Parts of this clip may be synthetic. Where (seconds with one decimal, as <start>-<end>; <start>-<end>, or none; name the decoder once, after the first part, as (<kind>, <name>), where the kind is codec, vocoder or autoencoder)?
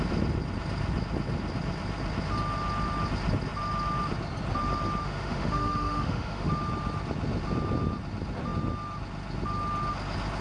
5.0-6.5 (autoencoder, DAC-VAE)